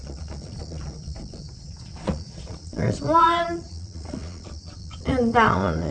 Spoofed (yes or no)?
yes